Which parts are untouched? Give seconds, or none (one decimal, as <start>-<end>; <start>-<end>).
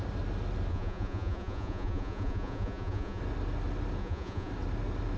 0.0-0.7; 3.2-4.0; 4.5-5.2